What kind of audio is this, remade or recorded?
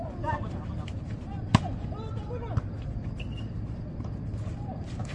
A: recorded